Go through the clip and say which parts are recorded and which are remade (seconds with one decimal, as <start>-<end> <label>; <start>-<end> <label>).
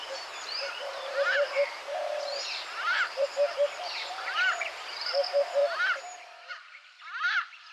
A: 0.0-5.6 remade; 5.6-6.5 recorded; 6.5-7.7 remade